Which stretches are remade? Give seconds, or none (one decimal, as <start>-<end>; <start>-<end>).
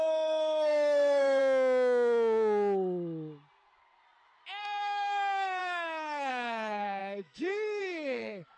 0.0-1.4; 4.6-8.6